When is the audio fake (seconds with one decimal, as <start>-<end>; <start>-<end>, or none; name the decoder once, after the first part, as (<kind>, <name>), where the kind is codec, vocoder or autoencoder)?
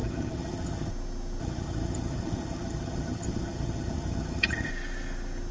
0.0-0.9 (vocoder, HiFi-GAN); 1.4-4.7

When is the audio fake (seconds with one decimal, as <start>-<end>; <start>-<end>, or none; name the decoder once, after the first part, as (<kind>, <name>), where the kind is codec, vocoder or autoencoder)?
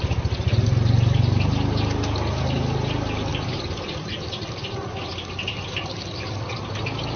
none